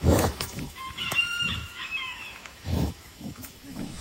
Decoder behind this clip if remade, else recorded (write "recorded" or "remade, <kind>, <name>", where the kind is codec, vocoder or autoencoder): remade, autoencoder, DAC-VAE